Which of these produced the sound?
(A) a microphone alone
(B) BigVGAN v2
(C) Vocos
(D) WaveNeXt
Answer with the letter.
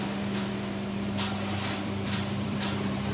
B